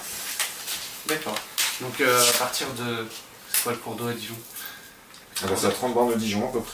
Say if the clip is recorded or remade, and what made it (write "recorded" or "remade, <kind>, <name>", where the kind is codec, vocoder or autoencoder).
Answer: recorded